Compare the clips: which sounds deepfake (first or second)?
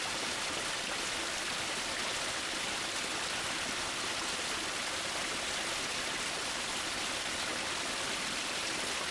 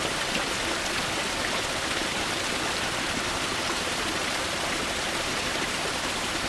second